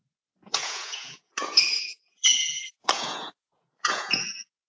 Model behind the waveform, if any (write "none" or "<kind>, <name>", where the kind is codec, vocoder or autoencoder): vocoder, Vocos